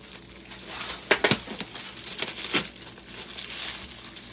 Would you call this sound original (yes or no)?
yes